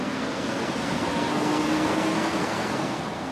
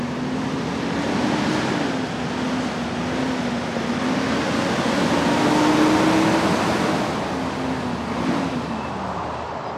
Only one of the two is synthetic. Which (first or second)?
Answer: first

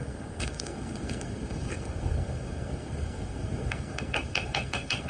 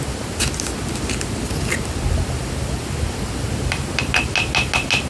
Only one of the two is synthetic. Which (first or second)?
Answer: first